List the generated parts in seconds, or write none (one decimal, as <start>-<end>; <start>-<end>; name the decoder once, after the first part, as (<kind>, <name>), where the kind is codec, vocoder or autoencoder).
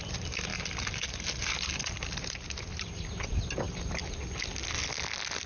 none